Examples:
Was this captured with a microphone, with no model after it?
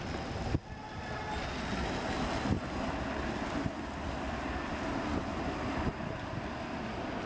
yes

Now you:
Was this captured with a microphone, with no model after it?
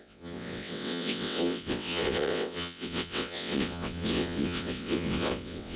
no